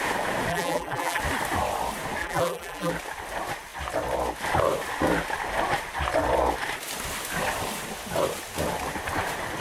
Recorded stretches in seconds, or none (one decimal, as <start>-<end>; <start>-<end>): 0.0-0.5; 1.2-2.2; 2.9-9.6